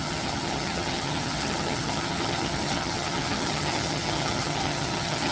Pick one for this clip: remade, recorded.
remade